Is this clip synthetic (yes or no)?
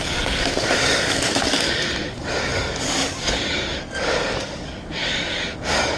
yes